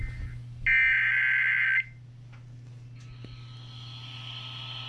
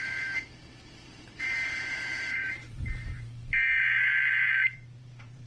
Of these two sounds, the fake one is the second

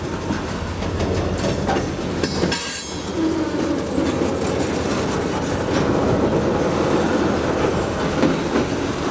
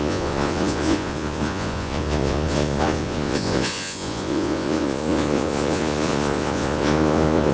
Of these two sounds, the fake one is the second